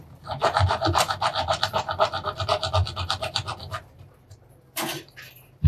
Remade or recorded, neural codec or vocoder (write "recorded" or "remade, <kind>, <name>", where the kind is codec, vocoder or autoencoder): remade, vocoder, BigVGAN v2